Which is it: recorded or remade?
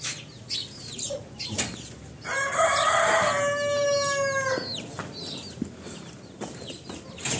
recorded